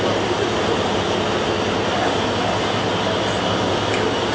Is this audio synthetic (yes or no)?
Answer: no